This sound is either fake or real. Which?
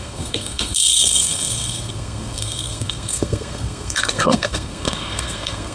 fake